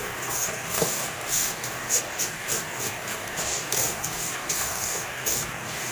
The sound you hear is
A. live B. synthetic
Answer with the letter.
B